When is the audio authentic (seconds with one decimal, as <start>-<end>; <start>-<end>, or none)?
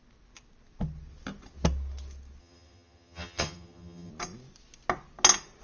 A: 0.0-2.4; 4.1-5.6